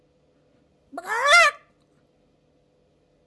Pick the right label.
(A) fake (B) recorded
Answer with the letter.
B